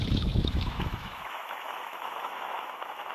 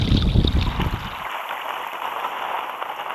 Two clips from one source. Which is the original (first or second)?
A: second